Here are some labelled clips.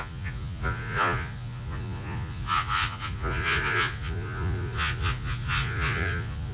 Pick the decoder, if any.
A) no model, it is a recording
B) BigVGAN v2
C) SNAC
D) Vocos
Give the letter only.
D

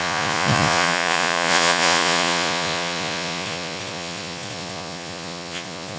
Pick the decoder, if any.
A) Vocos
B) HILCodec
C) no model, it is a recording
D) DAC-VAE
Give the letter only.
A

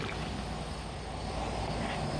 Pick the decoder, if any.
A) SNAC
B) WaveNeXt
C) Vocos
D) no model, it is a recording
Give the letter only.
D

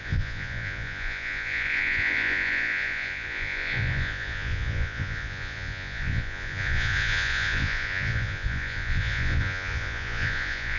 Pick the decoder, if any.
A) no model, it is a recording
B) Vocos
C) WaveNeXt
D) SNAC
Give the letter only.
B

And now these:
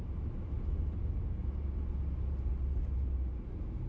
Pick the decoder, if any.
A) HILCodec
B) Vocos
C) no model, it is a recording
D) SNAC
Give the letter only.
C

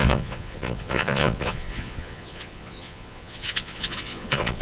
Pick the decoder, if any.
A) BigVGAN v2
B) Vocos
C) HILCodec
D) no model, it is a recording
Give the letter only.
B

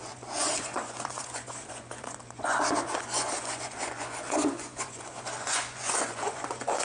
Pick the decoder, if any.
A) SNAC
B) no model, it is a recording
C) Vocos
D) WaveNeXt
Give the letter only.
C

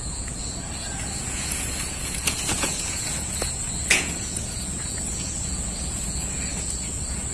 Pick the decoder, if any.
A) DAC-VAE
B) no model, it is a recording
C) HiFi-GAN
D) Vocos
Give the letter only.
D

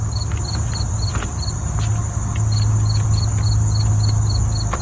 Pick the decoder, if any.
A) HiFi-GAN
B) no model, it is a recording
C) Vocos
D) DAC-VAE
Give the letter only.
B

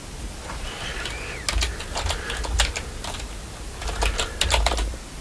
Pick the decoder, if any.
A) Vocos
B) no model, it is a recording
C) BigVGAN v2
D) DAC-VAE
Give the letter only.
B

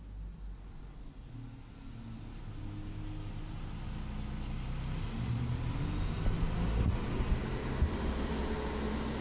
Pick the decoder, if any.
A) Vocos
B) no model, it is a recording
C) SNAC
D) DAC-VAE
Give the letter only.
B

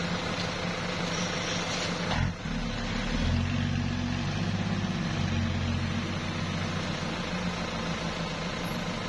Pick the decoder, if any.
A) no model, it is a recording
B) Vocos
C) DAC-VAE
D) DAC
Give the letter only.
A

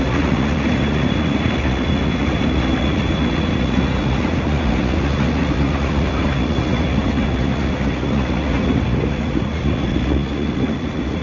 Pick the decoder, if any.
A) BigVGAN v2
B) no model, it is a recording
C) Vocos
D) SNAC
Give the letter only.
C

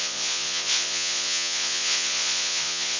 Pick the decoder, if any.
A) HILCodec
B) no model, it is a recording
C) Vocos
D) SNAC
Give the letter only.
C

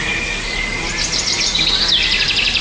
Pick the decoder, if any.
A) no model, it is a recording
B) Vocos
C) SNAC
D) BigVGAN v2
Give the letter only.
A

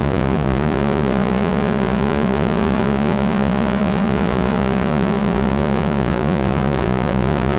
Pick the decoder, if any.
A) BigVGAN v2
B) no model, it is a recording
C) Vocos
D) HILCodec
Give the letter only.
C